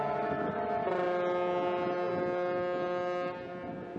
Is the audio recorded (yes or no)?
yes